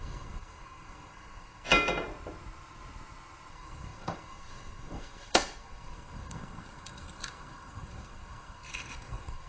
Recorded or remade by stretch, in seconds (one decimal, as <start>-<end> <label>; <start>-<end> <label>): 0.0-1.7 remade; 1.7-3.5 recorded; 3.5-9.5 remade